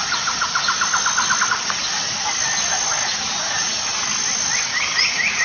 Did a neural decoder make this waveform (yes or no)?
no